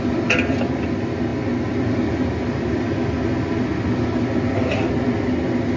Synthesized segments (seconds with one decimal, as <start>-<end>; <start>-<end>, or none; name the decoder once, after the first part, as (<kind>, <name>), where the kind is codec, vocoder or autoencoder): none